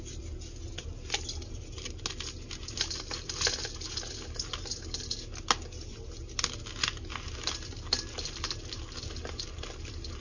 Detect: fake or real real